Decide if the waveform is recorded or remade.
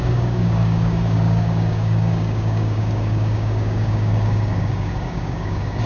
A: remade